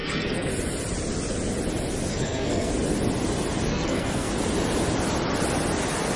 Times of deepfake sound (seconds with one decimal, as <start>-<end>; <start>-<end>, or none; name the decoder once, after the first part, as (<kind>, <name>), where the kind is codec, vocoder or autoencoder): 0.0-0.5 (codec, SNAC); 2.1-2.7; 3.7-4.3